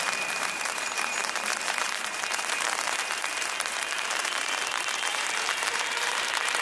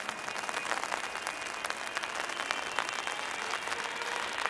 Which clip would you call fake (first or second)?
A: first